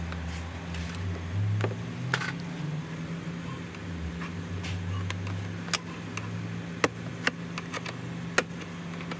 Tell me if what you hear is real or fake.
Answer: real